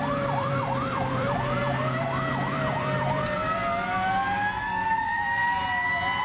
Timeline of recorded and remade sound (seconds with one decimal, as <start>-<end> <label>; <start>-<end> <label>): 0.0-3.6 remade; 3.6-4.9 recorded; 4.9-5.4 remade; 5.4-6.2 recorded